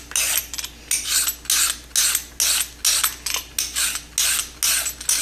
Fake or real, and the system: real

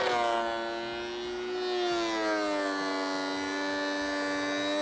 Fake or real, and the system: real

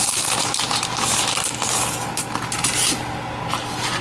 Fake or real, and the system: real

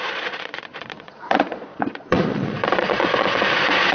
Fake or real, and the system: fake, vocoder, Vocos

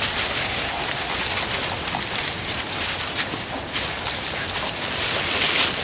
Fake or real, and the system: real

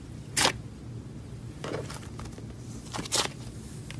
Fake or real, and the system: real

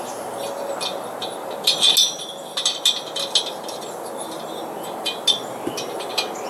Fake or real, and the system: real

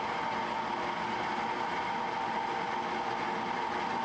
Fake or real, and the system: real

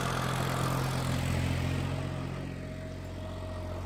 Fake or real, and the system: real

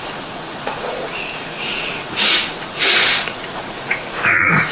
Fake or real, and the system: fake, vocoder, Vocos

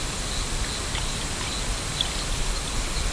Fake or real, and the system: real